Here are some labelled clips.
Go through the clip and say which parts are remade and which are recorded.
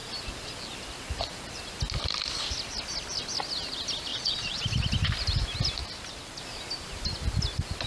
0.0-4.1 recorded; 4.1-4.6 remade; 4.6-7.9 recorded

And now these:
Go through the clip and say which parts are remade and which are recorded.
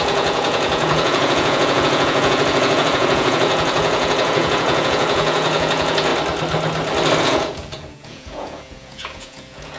0.0-6.1 remade; 6.1-7.2 recorded; 7.2-9.8 remade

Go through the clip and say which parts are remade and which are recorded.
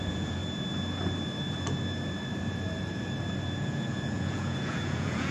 0.0-0.4 remade; 0.4-3.6 recorded; 3.6-5.3 remade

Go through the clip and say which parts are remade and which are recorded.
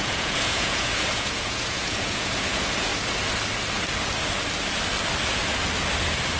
0.0-2.9 remade; 2.9-6.4 recorded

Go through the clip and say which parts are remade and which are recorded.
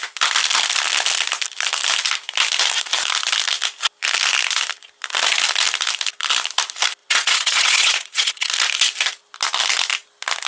0.0-7.0 recorded; 7.0-8.5 remade; 8.5-10.5 recorded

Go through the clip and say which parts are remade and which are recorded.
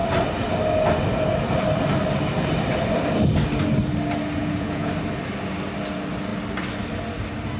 0.0-4.4 recorded; 4.4-4.9 remade; 4.9-7.6 recorded